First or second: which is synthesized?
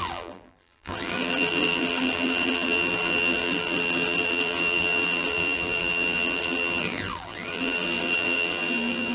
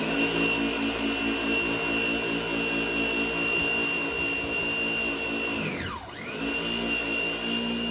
first